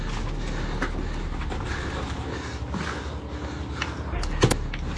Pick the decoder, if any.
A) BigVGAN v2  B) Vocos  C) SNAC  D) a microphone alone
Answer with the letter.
D